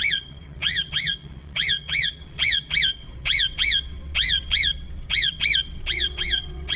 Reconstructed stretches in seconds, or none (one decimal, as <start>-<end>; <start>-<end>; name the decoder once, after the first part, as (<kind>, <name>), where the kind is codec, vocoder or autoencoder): 0.0-6.8 (vocoder, WaveNeXt)